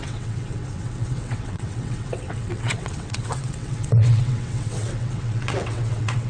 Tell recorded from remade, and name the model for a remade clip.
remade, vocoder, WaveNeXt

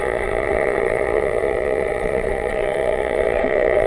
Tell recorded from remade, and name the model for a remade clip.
remade, vocoder, WaveNeXt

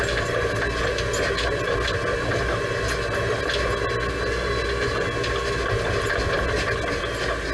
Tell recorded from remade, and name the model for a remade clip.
recorded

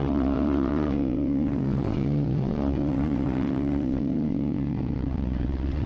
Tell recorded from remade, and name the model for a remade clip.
remade, vocoder, WaveNeXt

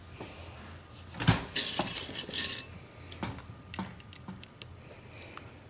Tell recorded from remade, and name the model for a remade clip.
recorded